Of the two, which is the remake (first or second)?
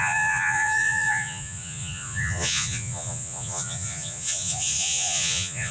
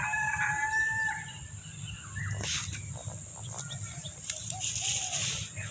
first